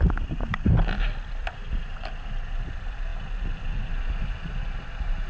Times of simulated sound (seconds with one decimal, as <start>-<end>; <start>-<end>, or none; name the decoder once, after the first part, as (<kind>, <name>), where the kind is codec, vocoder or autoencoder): none